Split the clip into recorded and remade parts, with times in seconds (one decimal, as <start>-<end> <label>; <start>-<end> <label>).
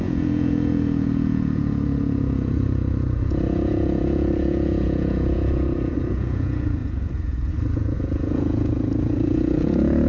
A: 0.0-10.1 remade